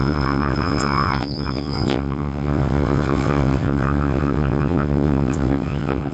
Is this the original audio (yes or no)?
no